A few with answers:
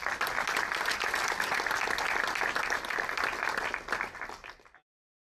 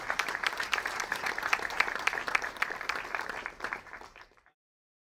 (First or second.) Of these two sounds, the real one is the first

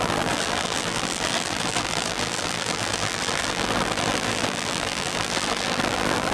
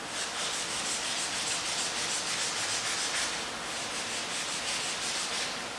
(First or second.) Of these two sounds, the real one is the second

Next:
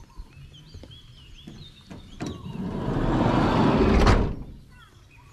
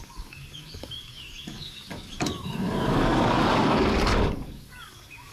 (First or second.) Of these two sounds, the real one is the first